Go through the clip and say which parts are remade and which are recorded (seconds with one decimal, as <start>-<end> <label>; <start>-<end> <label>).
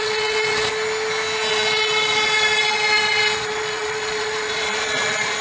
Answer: 0.0-0.7 remade; 0.7-1.5 recorded; 1.5-5.4 remade